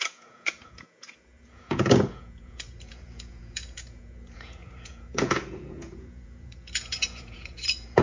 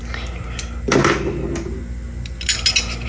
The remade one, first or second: first